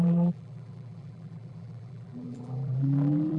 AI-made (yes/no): yes